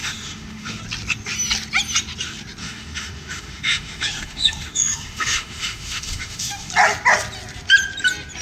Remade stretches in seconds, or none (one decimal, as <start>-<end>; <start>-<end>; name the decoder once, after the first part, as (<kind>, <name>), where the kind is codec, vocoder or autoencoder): 0.0-0.8 (autoencoder, DAC-VAE); 2.6-6.7